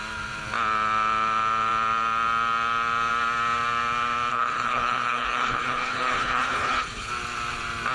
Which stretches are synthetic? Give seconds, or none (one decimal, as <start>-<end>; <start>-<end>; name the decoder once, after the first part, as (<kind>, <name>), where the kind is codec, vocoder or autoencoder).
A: 4.3-7.1 (codec, HILCodec)